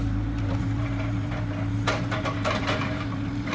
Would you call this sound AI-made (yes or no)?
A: yes